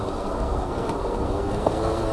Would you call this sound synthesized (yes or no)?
yes